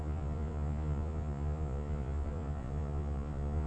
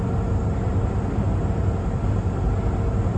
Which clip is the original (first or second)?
second